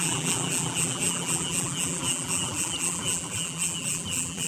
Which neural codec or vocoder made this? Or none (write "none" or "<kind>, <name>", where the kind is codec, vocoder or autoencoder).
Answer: vocoder, BigVGAN v2